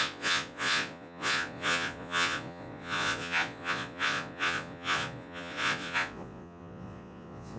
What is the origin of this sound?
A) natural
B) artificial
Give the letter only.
B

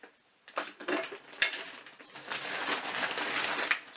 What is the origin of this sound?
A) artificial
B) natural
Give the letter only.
B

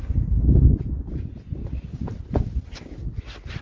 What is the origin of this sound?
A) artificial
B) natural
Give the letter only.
B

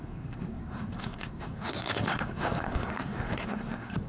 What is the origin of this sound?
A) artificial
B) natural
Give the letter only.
A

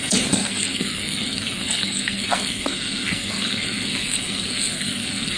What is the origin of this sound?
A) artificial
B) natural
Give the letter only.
A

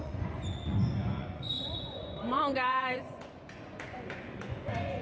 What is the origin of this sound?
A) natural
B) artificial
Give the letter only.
B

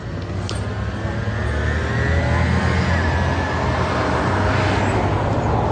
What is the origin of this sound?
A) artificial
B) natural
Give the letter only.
B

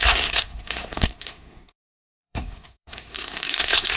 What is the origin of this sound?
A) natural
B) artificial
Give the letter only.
B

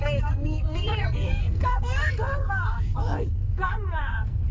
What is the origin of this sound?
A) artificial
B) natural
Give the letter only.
A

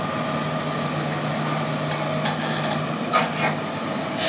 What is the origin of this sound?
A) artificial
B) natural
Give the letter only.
B